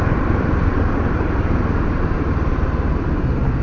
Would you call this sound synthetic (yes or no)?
yes